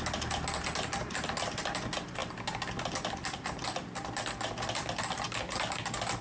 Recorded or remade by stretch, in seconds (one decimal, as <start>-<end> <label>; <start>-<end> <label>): 0.0-6.2 recorded